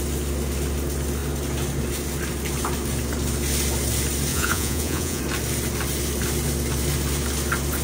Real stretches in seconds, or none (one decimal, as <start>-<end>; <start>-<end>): 0.0-4.3; 5.2-7.8